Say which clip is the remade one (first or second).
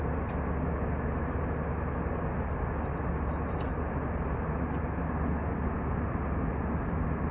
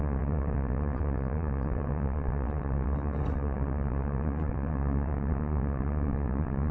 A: second